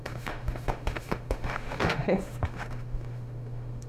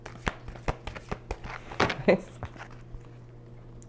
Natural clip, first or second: second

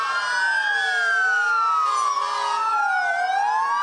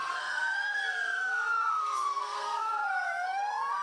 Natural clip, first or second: first